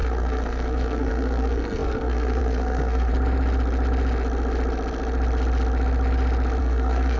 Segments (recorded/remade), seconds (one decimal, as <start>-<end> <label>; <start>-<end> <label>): 0.0-3.1 remade; 3.1-6.6 recorded; 6.6-7.2 remade